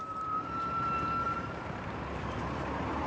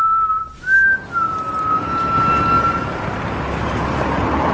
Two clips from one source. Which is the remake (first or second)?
first